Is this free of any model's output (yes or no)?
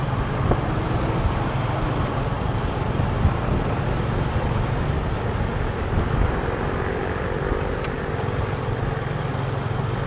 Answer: yes